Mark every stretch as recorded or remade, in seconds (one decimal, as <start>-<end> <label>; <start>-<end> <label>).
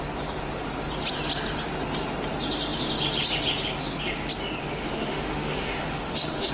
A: 0.0-4.6 recorded; 4.6-6.5 remade